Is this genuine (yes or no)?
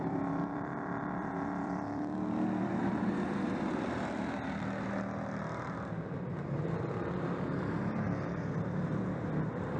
no